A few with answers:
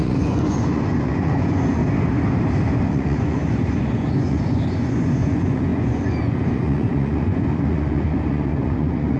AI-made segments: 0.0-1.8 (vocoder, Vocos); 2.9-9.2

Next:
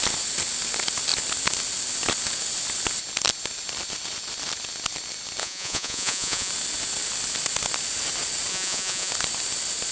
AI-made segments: 5.4-6.5 (vocoder, Vocos); 8.5-9.1

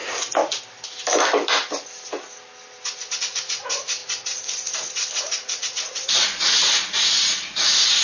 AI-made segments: 3.2-8.0 (vocoder, Vocos)

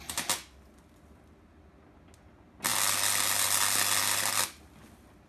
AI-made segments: none

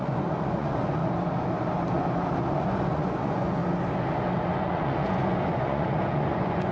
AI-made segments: 0.0-1.0 (vocoder, Vocos); 2.6-3.6; 4.4-6.7

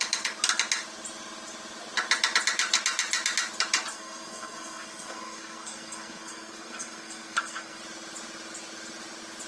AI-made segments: 3.9-7.8 (codec, SNAC)

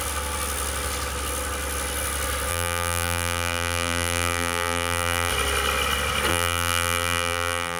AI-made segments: 2.5-5.3 (vocoder, BigVGAN v2); 6.3-7.8